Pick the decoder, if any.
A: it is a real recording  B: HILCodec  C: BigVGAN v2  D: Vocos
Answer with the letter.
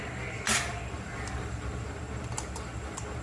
A